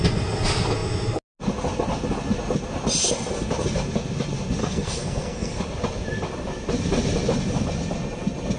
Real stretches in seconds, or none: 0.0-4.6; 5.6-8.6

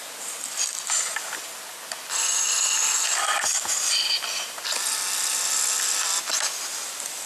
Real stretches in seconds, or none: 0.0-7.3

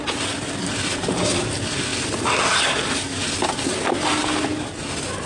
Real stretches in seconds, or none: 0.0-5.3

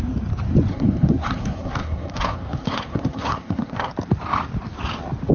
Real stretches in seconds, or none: 0.0-0.7; 3.9-5.3

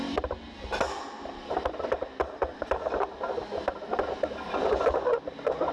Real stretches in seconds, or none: 0.0-5.7

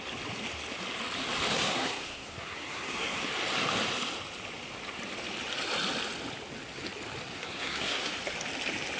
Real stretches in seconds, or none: 0.0-1.5; 3.2-7.3; 8.1-9.0